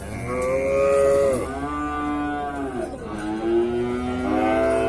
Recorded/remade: recorded